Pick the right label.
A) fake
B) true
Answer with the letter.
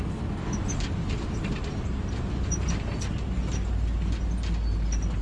B